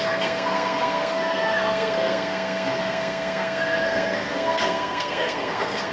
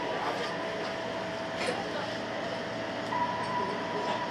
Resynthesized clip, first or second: first